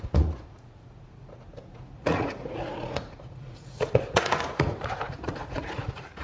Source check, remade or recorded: remade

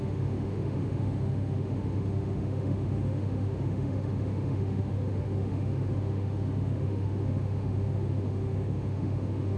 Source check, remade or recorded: remade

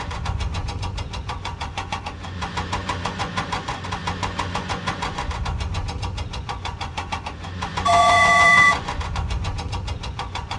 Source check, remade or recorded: remade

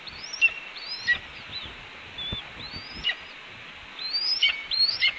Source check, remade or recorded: recorded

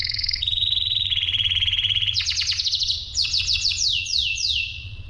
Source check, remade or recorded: remade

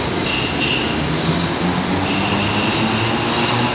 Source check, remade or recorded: recorded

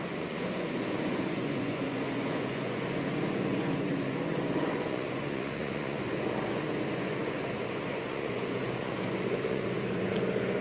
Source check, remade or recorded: remade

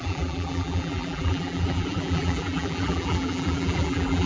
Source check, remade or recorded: remade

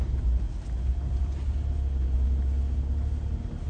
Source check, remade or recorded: recorded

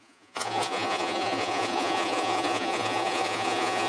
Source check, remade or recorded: remade